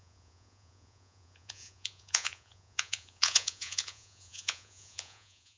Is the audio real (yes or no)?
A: no